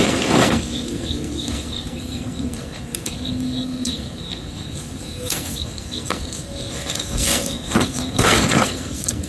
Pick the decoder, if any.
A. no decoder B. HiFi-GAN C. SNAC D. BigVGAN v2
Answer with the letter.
C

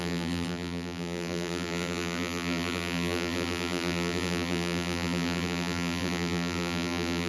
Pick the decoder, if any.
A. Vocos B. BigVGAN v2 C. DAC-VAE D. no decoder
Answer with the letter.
B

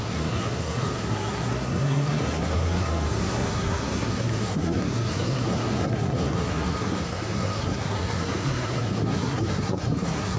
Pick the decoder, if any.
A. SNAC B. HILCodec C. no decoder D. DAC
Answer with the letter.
A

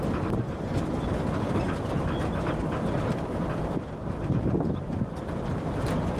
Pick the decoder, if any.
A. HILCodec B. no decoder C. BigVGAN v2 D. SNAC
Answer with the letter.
B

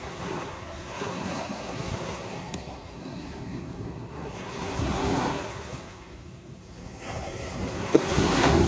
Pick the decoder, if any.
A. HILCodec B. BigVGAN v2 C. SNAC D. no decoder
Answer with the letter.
C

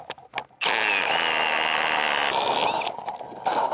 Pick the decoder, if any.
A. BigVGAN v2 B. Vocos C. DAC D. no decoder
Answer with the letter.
D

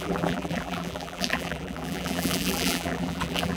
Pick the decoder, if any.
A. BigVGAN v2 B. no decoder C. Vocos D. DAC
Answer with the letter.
A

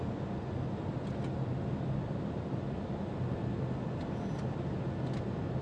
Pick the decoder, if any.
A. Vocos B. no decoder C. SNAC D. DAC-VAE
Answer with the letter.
B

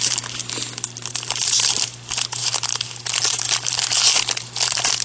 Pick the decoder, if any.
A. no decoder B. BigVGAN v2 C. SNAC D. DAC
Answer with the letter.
A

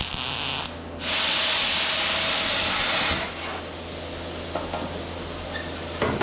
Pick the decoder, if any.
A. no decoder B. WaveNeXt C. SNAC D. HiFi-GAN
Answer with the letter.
A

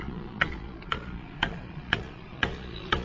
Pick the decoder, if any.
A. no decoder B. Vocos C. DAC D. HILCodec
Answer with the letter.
B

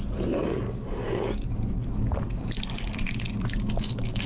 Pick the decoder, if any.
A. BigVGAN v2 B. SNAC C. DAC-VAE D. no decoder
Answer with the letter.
D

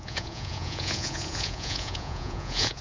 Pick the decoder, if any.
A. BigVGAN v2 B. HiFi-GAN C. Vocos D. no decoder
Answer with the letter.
C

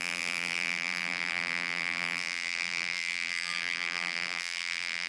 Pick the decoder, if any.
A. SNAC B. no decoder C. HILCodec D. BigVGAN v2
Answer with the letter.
D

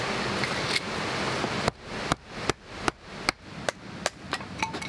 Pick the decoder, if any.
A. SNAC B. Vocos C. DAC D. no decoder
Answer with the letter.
D